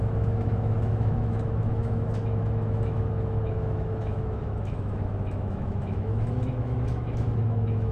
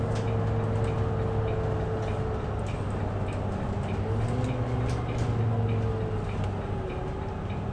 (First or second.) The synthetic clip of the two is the first